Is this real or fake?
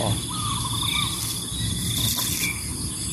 real